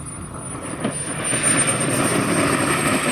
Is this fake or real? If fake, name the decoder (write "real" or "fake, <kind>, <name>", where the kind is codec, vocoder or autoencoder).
real